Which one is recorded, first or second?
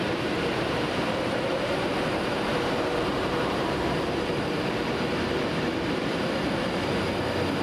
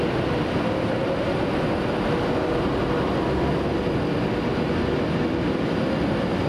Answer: second